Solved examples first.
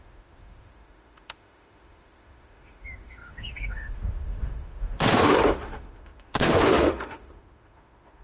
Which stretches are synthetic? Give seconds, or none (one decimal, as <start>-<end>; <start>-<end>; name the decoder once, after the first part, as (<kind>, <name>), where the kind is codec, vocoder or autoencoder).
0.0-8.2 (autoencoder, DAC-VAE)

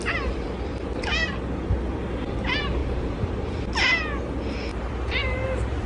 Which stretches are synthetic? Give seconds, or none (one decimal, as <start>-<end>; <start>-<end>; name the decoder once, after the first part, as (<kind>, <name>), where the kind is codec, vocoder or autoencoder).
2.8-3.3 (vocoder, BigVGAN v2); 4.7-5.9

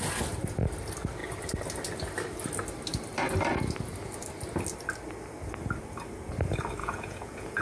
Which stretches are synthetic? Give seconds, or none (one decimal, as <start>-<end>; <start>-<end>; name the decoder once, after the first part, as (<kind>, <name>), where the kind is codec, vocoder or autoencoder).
6.8-7.6 (vocoder, Vocos)

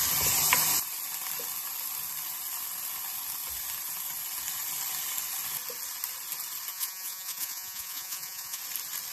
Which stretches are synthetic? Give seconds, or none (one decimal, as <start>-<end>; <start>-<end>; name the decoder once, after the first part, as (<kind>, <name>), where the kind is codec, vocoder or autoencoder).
6.7-8.6 (vocoder, Vocos)

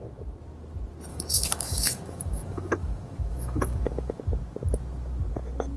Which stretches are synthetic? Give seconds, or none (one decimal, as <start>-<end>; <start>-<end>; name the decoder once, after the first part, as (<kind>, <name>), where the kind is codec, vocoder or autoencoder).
1.1-4.2 (autoencoder, DAC-VAE)

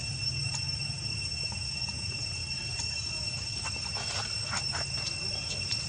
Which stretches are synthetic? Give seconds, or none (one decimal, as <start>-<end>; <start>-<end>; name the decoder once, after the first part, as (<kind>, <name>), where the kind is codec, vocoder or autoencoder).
0.6-2.4 (vocoder, Vocos); 5.3-5.9

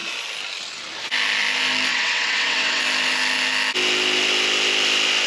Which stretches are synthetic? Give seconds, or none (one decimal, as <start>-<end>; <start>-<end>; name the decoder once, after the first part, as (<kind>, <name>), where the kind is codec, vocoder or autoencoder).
1.9-2.8 (vocoder, WaveNeXt)